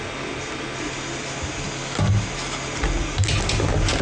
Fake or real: real